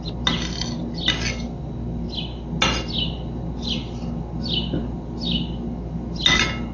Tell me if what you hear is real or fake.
real